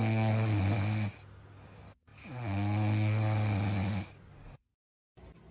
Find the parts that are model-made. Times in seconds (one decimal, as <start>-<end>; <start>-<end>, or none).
none